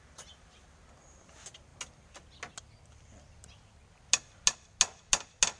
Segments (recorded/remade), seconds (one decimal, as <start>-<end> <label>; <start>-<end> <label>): 0.0-5.6 recorded